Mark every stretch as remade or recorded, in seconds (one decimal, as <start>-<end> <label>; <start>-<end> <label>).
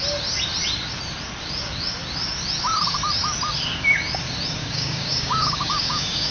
0.0-4.6 recorded; 4.6-6.3 remade